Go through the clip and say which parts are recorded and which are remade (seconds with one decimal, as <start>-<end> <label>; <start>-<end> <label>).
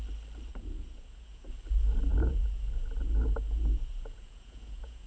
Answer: 0.0-0.5 recorded; 0.5-1.5 remade; 1.5-2.1 recorded; 2.1-5.1 remade